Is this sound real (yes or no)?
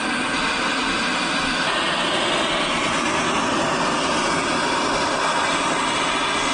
yes